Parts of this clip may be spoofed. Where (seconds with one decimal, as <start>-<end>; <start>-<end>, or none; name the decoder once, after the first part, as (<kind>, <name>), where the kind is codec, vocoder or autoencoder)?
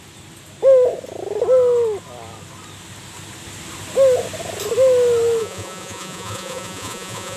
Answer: 5.4-7.4 (vocoder, Vocos)